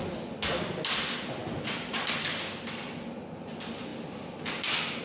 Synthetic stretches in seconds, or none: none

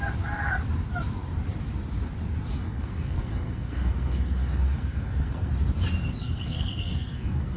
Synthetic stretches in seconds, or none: 2.5-5.5 (codec, SNAC); 6.2-7.6

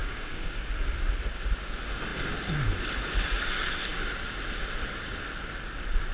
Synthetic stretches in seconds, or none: 0.0-0.6 (codec, DAC)

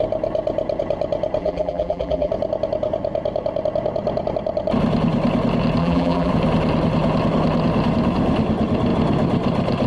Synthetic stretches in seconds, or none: 1.4-2.3 (vocoder, BigVGAN v2); 5.8-6.3

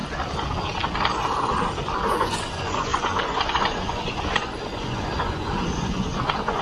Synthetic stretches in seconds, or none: 2.1-6.6 (vocoder, Vocos)